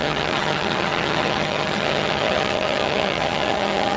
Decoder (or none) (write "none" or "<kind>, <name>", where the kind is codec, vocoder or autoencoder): vocoder, HiFi-GAN